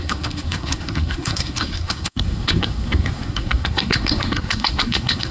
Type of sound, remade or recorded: remade